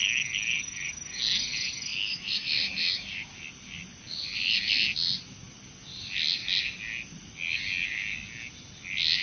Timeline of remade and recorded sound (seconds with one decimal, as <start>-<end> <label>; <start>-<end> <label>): 0.0-1.9 recorded; 1.9-3.3 remade; 3.3-9.2 recorded